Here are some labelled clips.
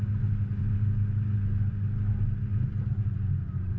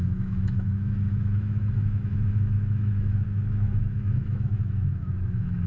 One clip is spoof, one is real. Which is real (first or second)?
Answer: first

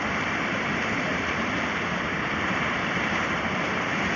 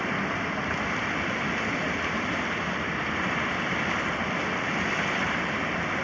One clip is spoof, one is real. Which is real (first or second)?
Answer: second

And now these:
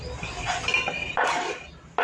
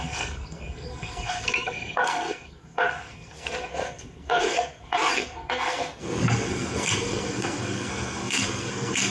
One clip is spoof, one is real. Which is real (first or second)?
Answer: first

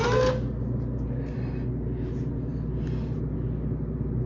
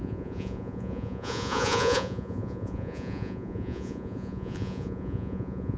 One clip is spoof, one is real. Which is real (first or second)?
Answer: first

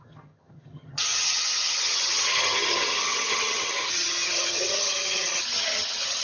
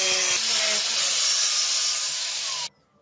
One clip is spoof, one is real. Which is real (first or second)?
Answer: second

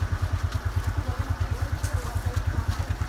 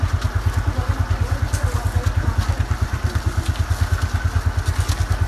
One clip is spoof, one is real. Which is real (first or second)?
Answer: second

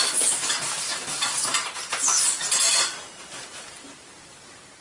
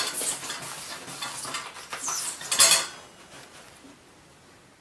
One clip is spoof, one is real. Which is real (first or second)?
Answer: second